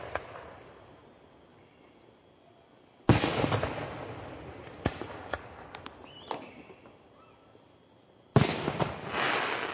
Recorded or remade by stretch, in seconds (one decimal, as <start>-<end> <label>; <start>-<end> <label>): 0.0-9.7 recorded